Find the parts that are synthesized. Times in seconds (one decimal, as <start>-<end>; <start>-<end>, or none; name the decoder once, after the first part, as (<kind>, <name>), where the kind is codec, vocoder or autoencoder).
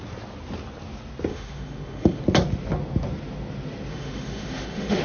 1.3-2.2 (autoencoder, DAC-VAE); 3.9-5.0